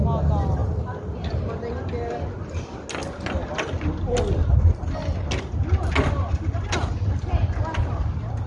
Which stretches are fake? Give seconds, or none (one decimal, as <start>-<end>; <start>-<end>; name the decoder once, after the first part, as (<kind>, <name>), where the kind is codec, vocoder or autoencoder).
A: none